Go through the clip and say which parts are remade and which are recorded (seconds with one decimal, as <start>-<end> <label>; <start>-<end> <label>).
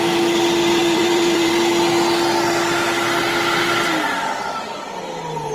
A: 0.0-0.8 recorded; 0.8-1.5 remade; 1.5-5.5 recorded